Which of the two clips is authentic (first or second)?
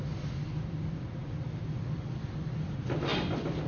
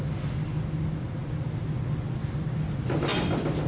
second